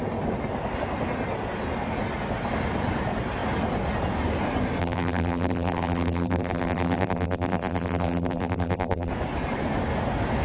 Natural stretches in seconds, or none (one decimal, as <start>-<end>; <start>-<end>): 0.0-4.8; 9.1-10.4